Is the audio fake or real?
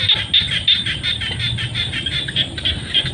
real